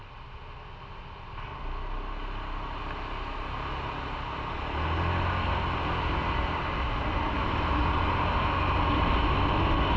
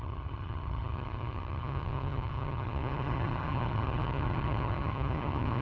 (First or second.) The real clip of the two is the first